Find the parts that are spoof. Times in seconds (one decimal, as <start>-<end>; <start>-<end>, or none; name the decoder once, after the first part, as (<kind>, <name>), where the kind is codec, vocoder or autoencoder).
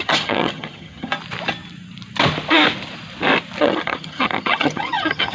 0.0-1.1 (vocoder, HiFi-GAN); 3.6-5.3